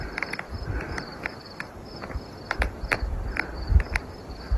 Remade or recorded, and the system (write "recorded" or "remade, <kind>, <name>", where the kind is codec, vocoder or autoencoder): remade, vocoder, BigVGAN v2